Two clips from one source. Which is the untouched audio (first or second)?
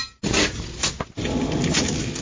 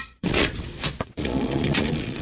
first